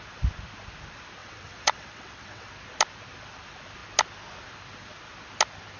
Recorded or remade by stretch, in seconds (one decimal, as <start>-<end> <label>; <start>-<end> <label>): 0.0-1.2 recorded; 1.2-2.5 remade; 2.5-5.8 recorded